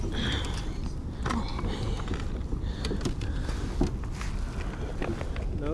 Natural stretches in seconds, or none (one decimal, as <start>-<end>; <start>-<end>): 0.0-5.7